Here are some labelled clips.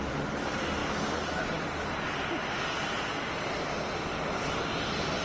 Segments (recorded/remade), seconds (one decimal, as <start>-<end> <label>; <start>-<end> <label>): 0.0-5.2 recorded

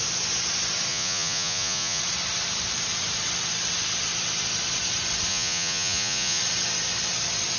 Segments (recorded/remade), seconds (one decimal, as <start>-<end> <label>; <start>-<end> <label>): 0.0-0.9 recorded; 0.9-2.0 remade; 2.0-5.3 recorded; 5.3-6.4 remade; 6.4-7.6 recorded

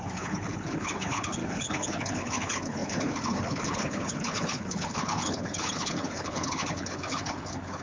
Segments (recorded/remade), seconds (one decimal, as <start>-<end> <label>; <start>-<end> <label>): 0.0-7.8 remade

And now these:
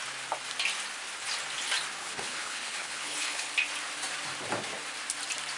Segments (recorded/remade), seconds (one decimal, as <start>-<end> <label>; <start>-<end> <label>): 0.0-2.0 recorded; 2.0-3.5 remade; 3.5-5.6 recorded